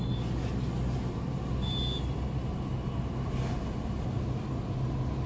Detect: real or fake real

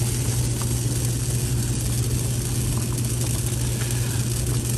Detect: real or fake real